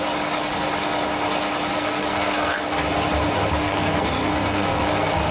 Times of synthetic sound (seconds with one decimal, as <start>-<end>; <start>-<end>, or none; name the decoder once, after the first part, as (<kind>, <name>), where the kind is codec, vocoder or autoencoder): 1.7-2.6 (codec, SNAC); 3.6-5.3